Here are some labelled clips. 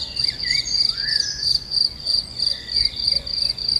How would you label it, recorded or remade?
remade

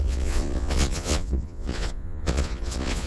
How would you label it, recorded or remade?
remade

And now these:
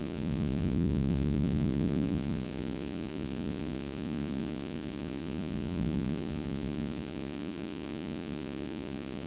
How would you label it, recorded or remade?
remade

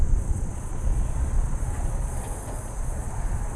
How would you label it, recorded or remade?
remade